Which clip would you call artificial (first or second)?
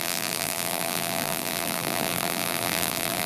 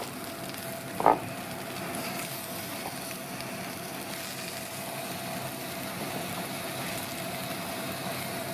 first